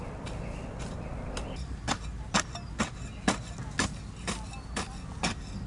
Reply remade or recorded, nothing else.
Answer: recorded